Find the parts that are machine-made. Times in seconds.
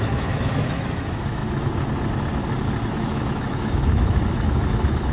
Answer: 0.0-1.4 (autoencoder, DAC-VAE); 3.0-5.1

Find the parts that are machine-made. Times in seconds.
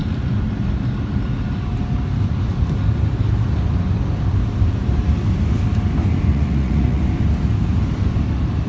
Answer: 6.3-7.0 (vocoder, Vocos)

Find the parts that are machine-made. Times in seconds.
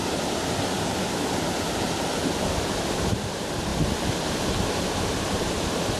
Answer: 0.0-3.7 (vocoder, BigVGAN v2); 4.4-6.0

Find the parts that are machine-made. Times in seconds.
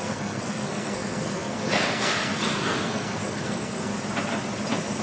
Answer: 0.0-3.9 (codec, SNAC)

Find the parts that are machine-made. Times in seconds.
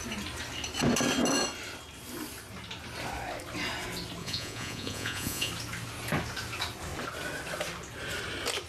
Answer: 4.2-5.5 (vocoder, Vocos)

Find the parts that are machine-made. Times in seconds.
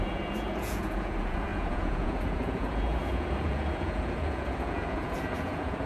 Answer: 0.0-5.9 (vocoder, Vocos)